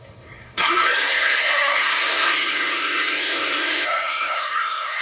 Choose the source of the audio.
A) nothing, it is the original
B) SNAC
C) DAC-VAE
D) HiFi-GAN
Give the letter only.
B